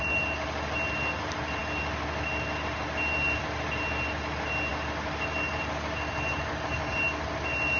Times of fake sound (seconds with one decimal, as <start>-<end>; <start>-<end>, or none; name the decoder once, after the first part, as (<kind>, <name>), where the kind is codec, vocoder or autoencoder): none